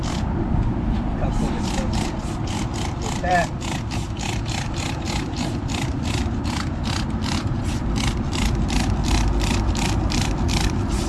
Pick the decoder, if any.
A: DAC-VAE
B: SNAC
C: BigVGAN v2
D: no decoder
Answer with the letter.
C